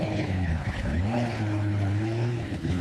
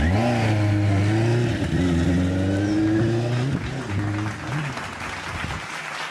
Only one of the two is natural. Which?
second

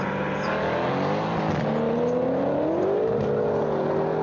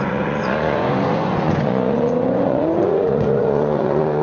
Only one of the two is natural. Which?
first